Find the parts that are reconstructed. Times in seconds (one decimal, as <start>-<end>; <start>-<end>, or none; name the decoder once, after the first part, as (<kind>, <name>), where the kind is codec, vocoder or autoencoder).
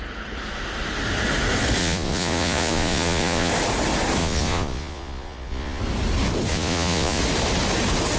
1.8-3.5 (vocoder, Vocos); 4.2-5.8; 6.5-7.2